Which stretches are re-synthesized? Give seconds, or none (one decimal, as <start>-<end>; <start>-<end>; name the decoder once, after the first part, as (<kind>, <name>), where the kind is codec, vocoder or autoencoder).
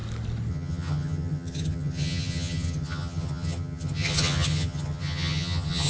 0.5-5.9 (vocoder, HiFi-GAN)